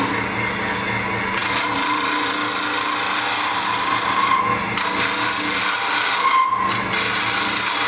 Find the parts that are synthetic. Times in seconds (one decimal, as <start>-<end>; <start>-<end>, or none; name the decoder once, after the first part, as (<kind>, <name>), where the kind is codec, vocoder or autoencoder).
none